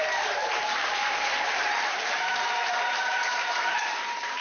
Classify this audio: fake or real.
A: fake